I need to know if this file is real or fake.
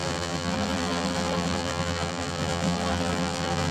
fake